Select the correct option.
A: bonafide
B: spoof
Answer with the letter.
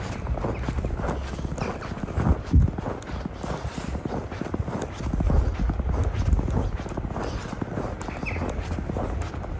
A